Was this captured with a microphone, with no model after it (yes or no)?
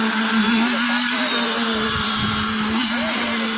yes